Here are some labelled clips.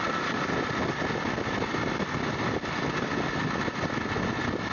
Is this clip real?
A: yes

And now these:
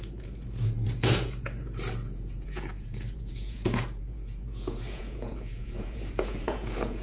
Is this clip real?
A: no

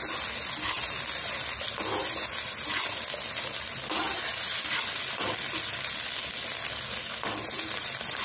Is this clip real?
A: yes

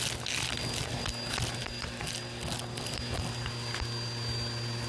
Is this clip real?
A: yes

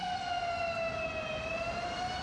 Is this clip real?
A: yes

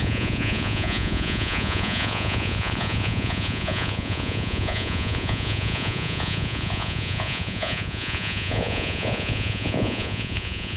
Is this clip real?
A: no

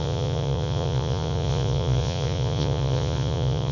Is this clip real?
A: no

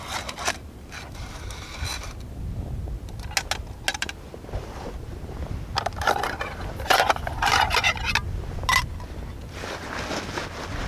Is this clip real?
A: yes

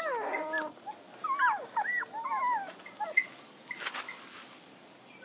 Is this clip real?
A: yes